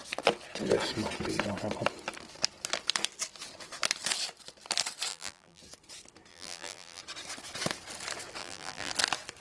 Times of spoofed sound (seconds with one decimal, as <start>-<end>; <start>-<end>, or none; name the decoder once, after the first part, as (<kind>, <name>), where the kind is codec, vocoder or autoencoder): 5.1-5.6 (vocoder, BigVGAN v2); 6.3-7.0; 8.4-8.9